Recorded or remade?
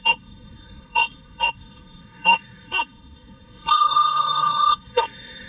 remade